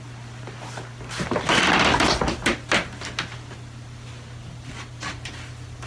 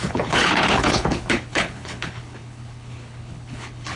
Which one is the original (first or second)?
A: first